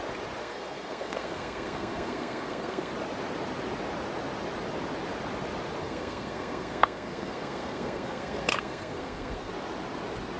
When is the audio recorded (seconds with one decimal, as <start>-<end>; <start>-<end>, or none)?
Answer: 0.0-0.4; 2.9-5.8; 9.5-10.4